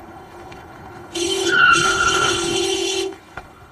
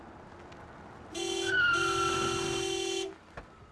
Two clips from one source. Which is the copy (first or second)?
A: first